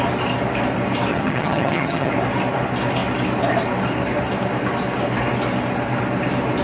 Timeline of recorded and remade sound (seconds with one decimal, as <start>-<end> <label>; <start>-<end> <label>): 0.0-1.1 recorded; 1.1-2.1 remade; 2.1-6.6 recorded